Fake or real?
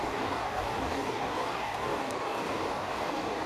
fake